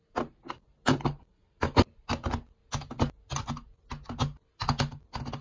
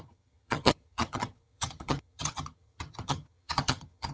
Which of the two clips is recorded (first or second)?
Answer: first